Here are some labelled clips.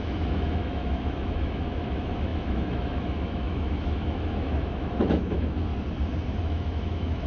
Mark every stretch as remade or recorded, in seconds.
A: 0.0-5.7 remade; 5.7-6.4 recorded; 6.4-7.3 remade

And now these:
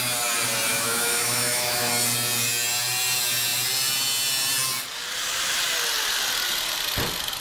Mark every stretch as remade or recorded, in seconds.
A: 0.0-0.7 recorded; 0.7-1.9 remade; 1.9-7.4 recorded

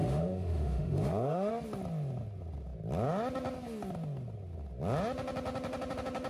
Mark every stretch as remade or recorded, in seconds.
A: 0.0-1.5 remade; 1.5-6.3 recorded

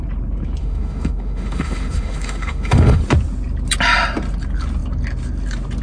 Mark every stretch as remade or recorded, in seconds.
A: 0.0-0.6 recorded; 0.6-3.0 remade; 3.0-5.8 recorded

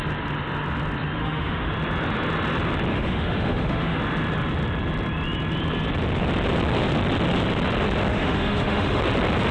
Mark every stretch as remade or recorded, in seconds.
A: 0.0-1.2 recorded; 1.2-1.7 remade; 1.7-2.9 recorded; 2.9-4.0 remade; 4.0-8.1 recorded; 8.1-9.0 remade; 9.0-9.5 recorded